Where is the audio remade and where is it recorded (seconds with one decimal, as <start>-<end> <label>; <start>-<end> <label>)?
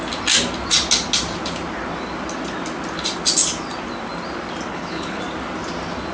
0.0-4.7 recorded; 4.7-5.2 remade; 5.2-6.1 recorded